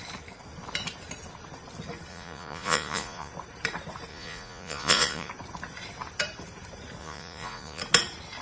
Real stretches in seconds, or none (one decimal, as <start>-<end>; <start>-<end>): 0.0-2.1; 3.3-4.1; 5.3-7.0; 7.8-8.4